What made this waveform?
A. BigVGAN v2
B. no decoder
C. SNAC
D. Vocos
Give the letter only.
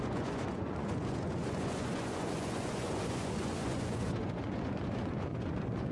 D